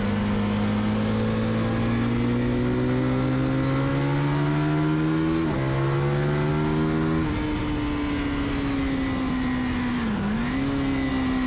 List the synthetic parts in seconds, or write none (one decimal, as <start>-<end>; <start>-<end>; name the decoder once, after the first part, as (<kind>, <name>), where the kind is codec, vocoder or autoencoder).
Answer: none